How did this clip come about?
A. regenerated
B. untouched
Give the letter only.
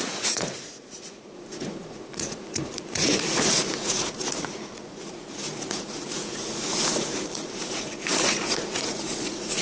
A